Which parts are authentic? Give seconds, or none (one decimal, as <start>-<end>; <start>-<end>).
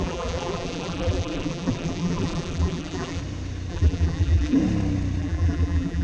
3.2-3.7; 4.6-5.2